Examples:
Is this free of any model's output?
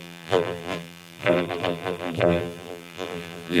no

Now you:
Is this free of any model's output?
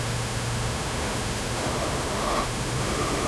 no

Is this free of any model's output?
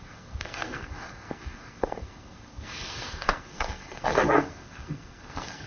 no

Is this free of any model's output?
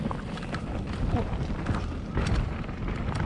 yes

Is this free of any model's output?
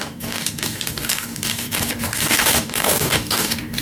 no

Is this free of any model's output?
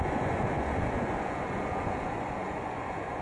no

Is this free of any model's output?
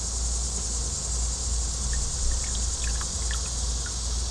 yes